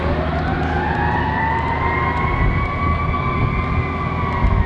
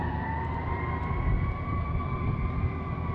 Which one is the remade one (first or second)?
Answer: second